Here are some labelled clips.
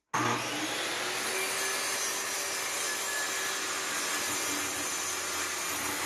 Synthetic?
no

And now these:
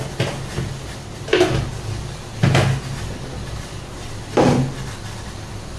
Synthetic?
no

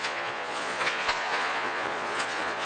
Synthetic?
yes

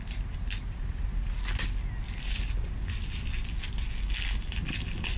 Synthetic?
no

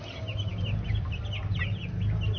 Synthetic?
no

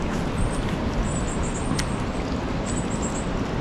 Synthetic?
no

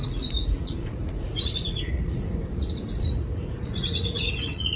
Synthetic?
yes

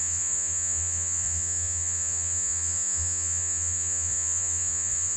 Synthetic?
yes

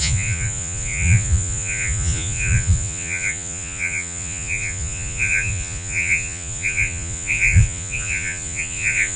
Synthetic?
yes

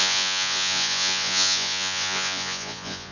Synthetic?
yes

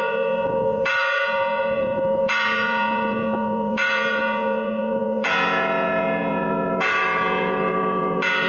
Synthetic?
yes